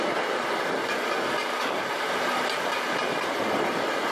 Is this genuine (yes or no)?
yes